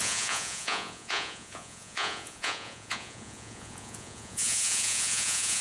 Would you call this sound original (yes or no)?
no